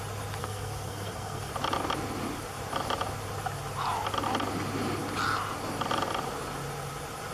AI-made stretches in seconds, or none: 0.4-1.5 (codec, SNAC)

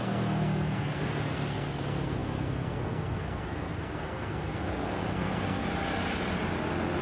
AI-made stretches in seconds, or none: 0.0-5.6 (codec, SNAC)

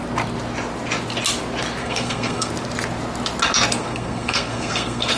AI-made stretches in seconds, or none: 1.8-2.5 (codec, SNAC); 3.8-5.2

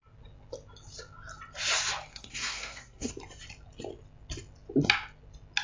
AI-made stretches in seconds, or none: 2.1-3.1 (codec, SNAC)

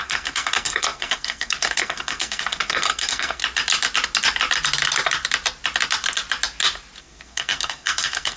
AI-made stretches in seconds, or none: 0.0-3.4 (codec, SNAC); 7.0-8.4